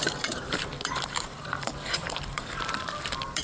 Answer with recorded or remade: remade